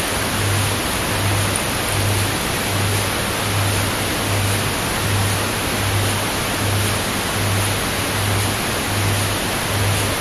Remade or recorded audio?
recorded